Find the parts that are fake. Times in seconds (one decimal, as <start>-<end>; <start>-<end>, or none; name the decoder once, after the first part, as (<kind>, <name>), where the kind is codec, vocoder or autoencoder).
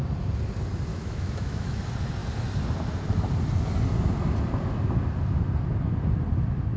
0.9-1.8 (autoencoder, DAC-VAE)